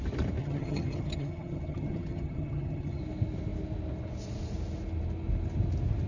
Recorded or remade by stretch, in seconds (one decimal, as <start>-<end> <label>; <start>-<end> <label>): 0.0-0.4 recorded; 0.4-3.0 remade; 3.0-6.1 recorded